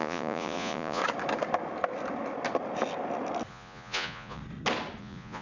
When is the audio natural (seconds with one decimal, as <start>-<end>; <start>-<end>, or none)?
1.0-3.5; 4.4-5.0